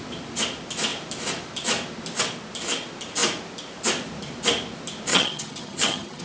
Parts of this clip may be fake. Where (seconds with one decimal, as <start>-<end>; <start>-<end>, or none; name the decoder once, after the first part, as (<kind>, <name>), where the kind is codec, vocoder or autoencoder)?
5.1-6.2 (vocoder, HiFi-GAN)

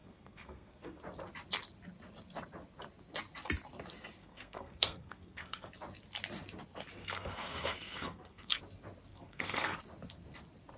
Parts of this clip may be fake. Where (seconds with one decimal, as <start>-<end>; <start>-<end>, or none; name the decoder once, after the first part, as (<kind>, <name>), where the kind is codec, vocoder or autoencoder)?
0.0-1.0 (codec, SNAC); 4.2-5.7; 7.0-8.6; 9.1-9.8

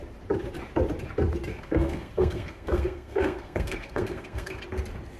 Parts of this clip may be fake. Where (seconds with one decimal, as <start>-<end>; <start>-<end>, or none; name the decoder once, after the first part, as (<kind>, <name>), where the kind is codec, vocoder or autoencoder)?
1.5-4.6 (codec, SNAC)